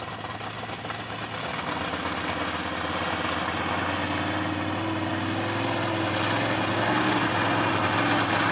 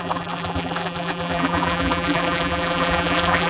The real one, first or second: first